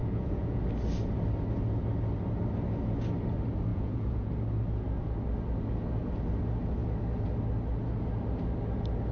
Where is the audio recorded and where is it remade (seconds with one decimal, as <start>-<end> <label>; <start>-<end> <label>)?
0.0-0.6 remade; 0.6-3.7 recorded; 3.7-4.3 remade; 4.3-9.1 recorded